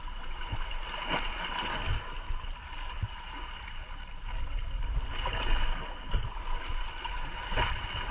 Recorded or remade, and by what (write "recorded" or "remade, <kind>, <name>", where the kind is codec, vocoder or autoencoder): recorded